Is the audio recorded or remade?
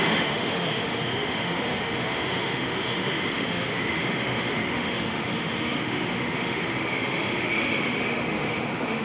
remade